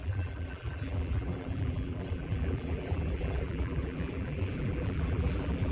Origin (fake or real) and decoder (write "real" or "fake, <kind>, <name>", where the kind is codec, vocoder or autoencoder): fake, vocoder, BigVGAN v2